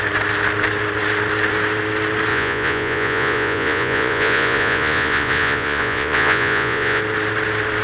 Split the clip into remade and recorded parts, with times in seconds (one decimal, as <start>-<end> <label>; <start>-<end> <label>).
0.0-2.3 recorded; 2.3-7.0 remade; 7.0-7.8 recorded